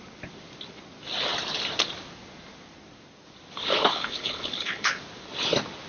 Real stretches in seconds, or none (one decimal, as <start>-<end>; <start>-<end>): 0.0-3.7; 5.0-5.9